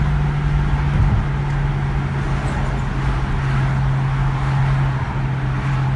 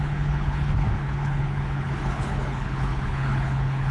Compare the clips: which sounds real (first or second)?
first